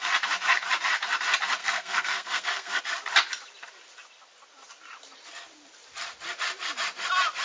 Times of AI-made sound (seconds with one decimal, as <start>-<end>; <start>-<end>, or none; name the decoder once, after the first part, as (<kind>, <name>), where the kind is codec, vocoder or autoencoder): 1.6-2.8 (codec, SNAC)